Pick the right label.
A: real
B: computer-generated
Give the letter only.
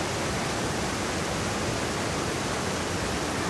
A